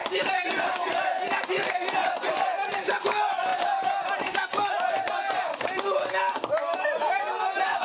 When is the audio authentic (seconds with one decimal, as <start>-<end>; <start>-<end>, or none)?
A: 0.9-2.0; 3.0-7.8